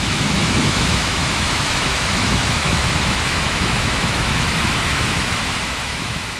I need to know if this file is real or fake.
fake